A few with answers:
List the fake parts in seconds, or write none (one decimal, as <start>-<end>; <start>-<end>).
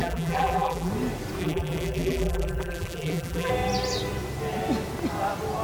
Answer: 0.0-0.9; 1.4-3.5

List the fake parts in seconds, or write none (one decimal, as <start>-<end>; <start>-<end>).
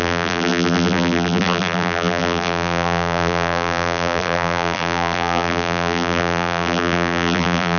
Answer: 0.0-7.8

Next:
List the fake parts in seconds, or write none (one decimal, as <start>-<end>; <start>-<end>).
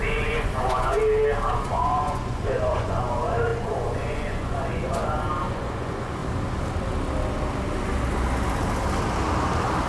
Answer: 0.0-1.0; 1.5-6.2